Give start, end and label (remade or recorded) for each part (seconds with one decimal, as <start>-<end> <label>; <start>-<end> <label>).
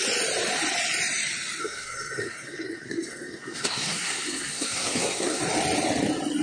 0.0-1.6 recorded; 1.6-5.4 remade; 5.4-6.4 recorded